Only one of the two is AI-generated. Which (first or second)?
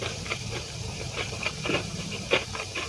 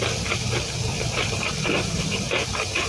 first